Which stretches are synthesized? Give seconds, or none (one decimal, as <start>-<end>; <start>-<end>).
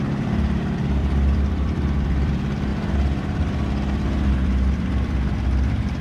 0.0-6.0